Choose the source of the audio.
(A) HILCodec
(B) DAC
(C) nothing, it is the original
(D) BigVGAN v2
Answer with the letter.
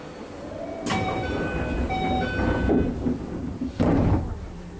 C